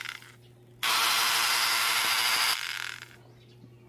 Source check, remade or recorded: recorded